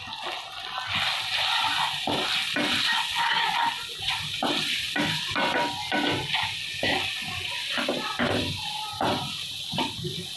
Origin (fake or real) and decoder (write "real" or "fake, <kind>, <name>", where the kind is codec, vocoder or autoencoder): real